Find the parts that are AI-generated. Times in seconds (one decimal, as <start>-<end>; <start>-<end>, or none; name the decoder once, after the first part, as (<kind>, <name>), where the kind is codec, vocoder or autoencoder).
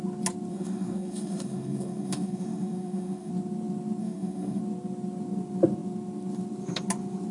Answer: 0.5-3.3 (autoencoder, DAC-VAE); 4.0-4.6